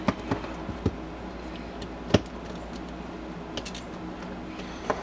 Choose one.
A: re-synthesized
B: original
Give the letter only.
B